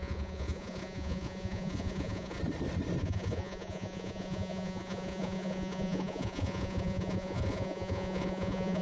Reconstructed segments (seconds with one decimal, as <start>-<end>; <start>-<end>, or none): 0.0-2.4; 3.0-8.8